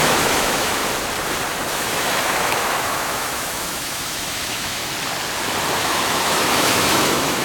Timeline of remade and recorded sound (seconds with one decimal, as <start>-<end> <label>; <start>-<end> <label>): 0.0-0.8 remade; 0.8-1.7 recorded; 1.7-4.8 remade; 4.8-5.8 recorded; 5.8-7.4 remade